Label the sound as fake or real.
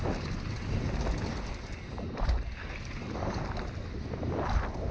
real